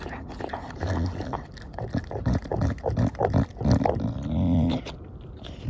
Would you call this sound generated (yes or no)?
no